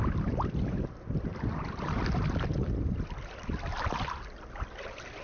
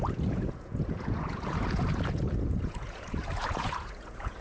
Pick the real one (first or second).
first